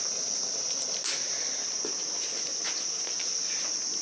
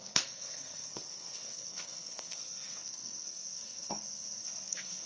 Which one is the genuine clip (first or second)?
first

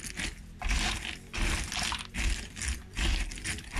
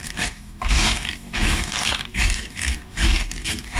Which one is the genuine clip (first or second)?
first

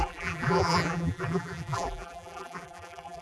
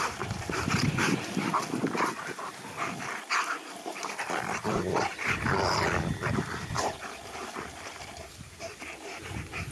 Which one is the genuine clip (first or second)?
second